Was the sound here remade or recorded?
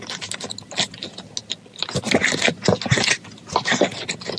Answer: recorded